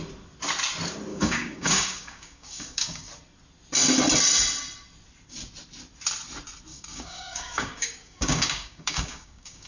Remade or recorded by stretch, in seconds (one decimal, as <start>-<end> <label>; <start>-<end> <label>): 0.0-1.1 recorded; 1.1-3.1 remade; 3.1-6.7 recorded; 6.7-9.7 remade